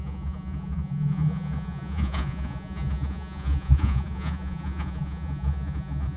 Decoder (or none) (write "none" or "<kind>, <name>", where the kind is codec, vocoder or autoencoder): vocoder, Vocos